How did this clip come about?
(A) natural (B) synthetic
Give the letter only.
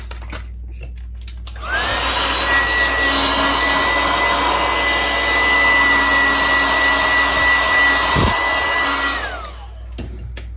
A